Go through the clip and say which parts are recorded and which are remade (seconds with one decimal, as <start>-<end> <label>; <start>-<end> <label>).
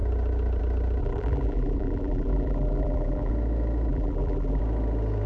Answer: 0.0-1.0 recorded; 1.0-3.3 remade; 3.3-3.9 recorded; 3.9-4.6 remade; 4.6-5.3 recorded